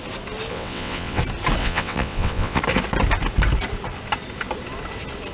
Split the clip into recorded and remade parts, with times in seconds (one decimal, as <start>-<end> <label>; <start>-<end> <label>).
0.0-0.5 recorded; 0.5-1.2 remade; 1.2-1.6 recorded; 1.6-2.6 remade; 2.6-5.3 recorded